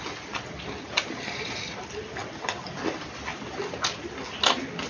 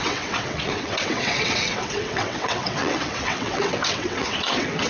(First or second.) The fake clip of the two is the second